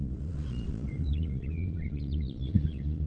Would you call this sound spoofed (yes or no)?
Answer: yes